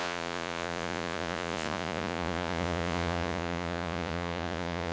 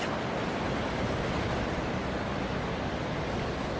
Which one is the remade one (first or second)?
first